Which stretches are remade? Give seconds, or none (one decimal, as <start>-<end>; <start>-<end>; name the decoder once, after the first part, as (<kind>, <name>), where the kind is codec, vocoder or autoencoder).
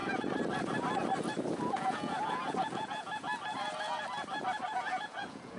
1.7-3.3 (vocoder, Vocos); 4.6-5.6